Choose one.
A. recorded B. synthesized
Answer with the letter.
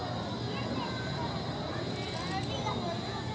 A